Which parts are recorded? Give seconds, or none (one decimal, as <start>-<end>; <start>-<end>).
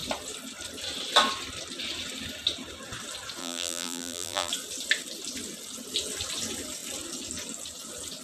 0.0-3.4; 4.5-8.2